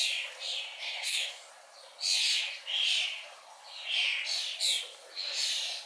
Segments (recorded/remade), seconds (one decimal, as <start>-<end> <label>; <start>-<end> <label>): 0.0-0.8 recorded; 0.8-1.5 remade; 1.5-5.9 recorded